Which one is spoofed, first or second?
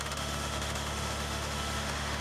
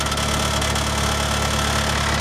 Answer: first